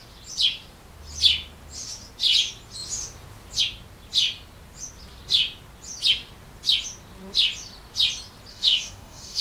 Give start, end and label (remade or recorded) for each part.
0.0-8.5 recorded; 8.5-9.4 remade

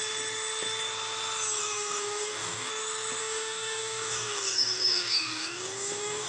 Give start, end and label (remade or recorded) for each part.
0.0-1.6 recorded; 1.6-2.7 remade; 2.7-3.2 recorded; 3.2-6.3 remade

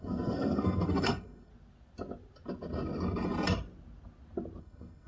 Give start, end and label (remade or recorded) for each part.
0.0-1.5 remade; 1.5-4.6 recorded; 4.6-5.1 remade